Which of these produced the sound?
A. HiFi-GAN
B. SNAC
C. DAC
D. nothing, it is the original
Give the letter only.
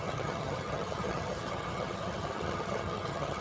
A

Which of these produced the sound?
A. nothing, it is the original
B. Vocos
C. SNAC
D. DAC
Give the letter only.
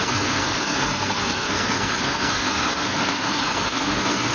C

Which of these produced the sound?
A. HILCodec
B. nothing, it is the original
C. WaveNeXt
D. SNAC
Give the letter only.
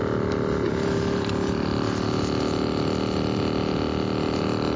B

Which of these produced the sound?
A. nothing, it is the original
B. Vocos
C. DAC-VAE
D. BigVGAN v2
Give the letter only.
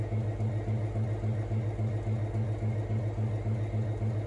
A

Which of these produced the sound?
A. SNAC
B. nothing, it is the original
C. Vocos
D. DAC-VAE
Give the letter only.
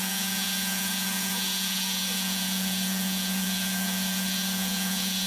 C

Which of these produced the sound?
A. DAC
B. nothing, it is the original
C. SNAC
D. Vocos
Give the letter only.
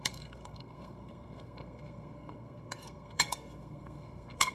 C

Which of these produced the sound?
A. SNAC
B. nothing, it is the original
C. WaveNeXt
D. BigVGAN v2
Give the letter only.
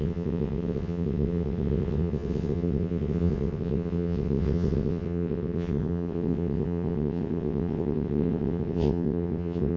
C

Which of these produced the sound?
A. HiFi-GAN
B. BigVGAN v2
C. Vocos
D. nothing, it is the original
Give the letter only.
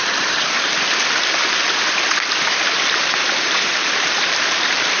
B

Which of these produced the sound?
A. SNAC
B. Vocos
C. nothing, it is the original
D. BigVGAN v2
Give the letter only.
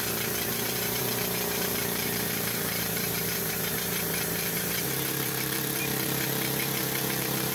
D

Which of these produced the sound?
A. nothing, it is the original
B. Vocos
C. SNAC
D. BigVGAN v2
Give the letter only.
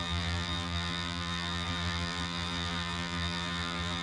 D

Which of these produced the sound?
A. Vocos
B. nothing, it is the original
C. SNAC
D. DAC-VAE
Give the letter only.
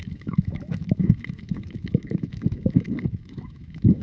D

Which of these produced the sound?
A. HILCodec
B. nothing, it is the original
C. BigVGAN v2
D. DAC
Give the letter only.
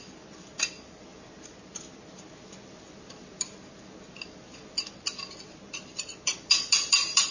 B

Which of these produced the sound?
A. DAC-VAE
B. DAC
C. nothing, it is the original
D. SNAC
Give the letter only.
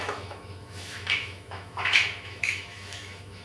A